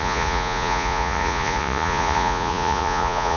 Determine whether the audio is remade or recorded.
remade